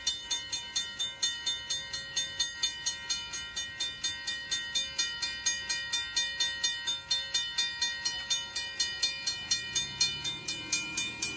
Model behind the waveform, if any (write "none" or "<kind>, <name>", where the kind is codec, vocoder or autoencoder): none